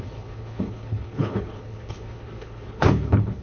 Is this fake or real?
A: fake